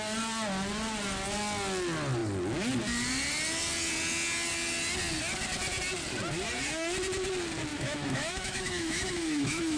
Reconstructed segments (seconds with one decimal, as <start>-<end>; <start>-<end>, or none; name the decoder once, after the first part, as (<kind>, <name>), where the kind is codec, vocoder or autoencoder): 7.7-9.8 (autoencoder, DAC-VAE)